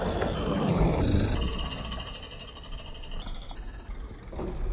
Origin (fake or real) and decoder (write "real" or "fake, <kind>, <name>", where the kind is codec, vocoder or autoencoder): real